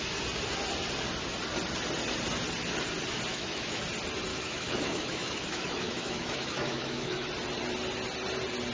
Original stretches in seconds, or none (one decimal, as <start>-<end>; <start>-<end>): 0.0-3.3; 3.8-4.3; 7.3-8.7